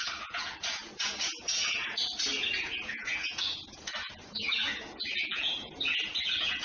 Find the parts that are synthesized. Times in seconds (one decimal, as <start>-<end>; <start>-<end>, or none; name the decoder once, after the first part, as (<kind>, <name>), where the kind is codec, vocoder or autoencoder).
0.0-6.6 (vocoder, Vocos)